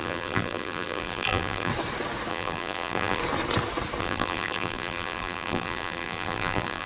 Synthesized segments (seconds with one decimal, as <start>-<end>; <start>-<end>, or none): 0.0-1.7; 2.3-3.2; 4.0-6.9